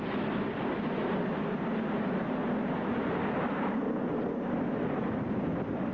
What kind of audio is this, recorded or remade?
recorded